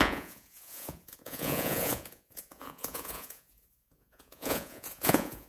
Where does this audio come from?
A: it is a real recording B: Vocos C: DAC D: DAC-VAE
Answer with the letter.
B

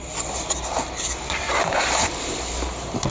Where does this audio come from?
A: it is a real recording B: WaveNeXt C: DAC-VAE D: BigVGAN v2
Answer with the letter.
A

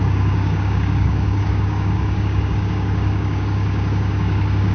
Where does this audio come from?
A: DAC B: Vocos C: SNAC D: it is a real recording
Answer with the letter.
A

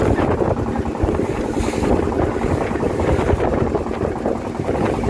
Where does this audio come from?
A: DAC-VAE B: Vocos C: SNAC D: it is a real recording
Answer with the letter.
D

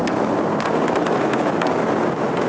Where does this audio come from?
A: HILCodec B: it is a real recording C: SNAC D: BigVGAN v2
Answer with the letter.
B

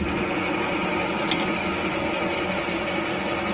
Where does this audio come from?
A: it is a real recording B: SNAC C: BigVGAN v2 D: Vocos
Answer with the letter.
A